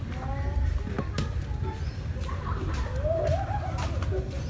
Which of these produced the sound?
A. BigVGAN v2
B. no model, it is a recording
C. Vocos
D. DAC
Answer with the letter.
B